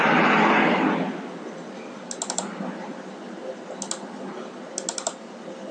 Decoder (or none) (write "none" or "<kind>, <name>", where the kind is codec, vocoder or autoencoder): none